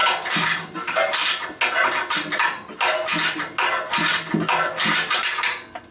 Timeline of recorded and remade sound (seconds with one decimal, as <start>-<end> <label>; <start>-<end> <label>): 0.0-5.9 recorded